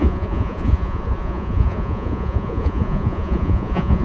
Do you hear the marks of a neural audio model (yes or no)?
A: yes